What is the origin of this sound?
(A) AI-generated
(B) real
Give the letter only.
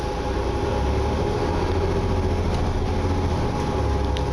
B